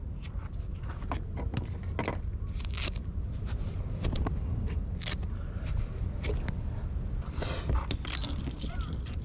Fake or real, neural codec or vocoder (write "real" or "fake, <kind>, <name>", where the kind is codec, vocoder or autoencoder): real